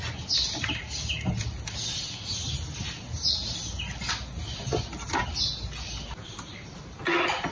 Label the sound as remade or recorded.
recorded